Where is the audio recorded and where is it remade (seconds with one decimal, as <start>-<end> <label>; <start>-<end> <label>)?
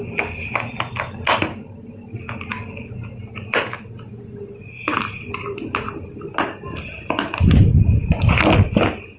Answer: 0.0-4.9 recorded; 4.9-6.3 remade; 6.3-9.2 recorded